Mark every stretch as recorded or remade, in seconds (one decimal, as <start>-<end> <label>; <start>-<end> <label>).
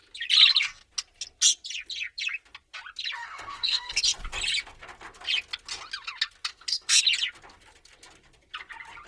0.0-3.2 recorded; 3.2-4.0 remade; 4.0-6.5 recorded; 6.5-7.0 remade; 7.0-9.1 recorded